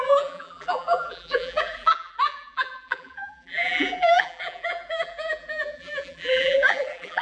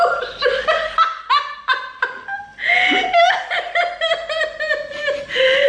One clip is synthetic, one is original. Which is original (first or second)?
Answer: second